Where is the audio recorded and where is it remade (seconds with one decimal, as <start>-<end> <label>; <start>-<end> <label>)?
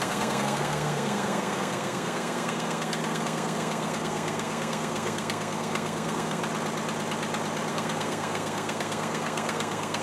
0.0-6.4 remade; 6.4-7.7 recorded; 7.7-10.0 remade